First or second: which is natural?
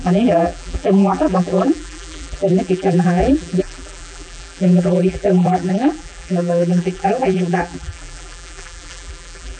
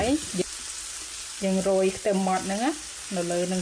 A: second